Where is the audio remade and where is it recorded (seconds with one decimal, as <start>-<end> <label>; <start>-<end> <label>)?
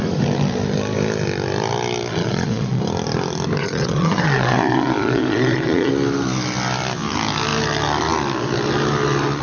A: 0.0-2.1 recorded; 2.1-2.8 remade; 2.8-3.6 recorded; 3.6-5.9 remade; 5.9-9.4 recorded